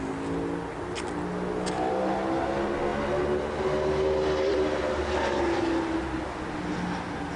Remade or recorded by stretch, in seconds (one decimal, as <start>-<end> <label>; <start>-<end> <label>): 0.0-7.4 recorded